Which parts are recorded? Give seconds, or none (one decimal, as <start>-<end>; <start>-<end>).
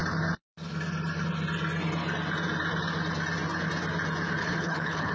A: 0.0-4.4